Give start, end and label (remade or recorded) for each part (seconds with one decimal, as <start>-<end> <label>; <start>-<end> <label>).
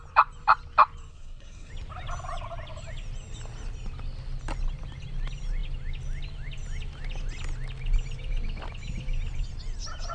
0.0-1.1 recorded; 1.1-1.7 remade; 1.7-10.1 recorded